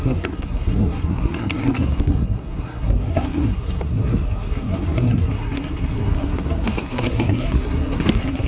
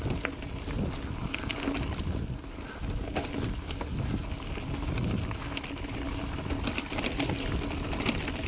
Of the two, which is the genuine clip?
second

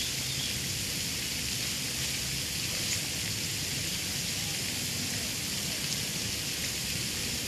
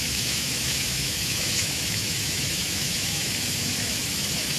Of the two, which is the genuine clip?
first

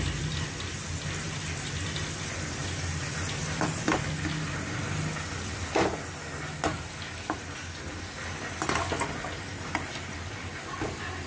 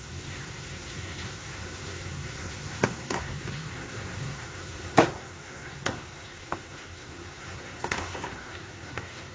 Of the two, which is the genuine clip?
first